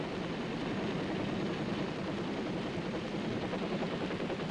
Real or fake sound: real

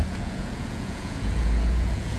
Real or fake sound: fake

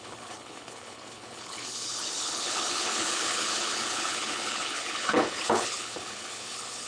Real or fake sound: fake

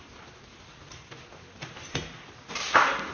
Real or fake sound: real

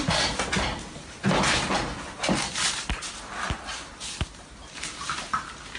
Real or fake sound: real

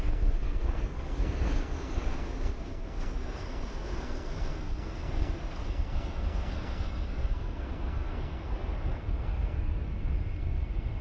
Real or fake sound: fake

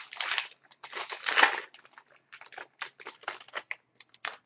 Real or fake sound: real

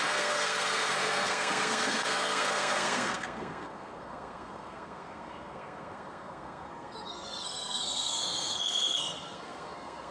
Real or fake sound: fake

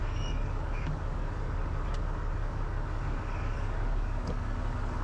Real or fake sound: fake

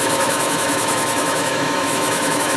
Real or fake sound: fake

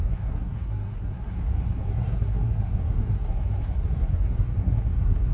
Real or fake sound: fake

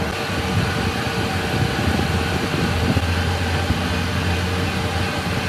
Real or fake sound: real